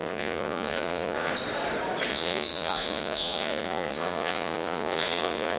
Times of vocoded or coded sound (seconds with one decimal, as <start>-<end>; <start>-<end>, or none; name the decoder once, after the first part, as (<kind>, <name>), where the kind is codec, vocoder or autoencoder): 0.0-1.3 (vocoder, Vocos); 2.1-5.6